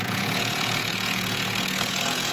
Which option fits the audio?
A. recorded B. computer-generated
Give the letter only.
B